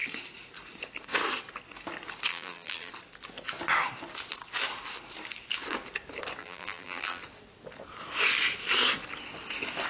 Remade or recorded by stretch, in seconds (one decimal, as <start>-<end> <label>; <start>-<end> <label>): 0.0-2.3 recorded; 2.3-2.9 remade; 2.9-6.4 recorded; 6.4-7.2 remade; 7.2-9.9 recorded